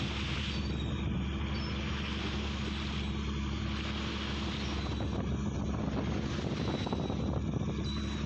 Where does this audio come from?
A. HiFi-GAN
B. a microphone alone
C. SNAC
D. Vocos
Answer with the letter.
B